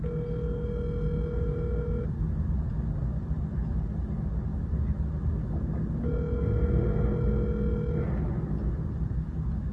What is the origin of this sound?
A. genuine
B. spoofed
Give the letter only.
A